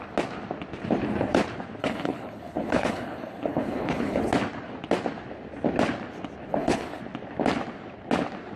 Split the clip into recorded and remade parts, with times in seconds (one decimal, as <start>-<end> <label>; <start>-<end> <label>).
0.0-1.8 recorded; 1.8-4.2 remade; 4.2-6.5 recorded; 6.5-7.0 remade; 7.0-8.6 recorded